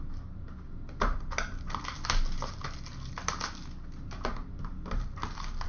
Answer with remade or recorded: recorded